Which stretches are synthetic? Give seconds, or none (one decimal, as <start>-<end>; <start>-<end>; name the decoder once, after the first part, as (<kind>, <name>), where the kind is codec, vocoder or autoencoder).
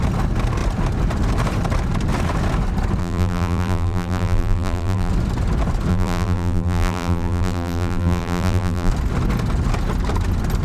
3.0-5.1 (vocoder, BigVGAN v2); 5.9-8.9